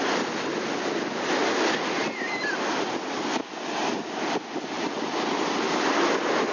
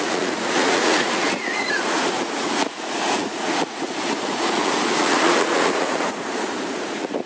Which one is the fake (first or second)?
second